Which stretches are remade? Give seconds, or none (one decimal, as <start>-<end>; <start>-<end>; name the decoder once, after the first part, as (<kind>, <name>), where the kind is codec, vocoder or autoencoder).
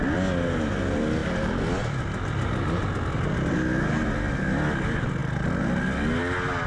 none